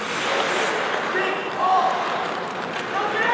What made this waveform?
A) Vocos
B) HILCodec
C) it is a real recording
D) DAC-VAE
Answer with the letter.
C